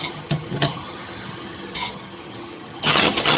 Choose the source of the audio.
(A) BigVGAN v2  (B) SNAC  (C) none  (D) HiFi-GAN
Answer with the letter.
D